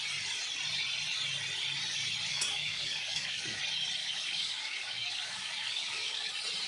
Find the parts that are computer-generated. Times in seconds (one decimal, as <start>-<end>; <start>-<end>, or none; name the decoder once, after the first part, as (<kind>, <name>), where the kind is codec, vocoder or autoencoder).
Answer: 2.3-3.6 (codec, DAC); 4.0-6.3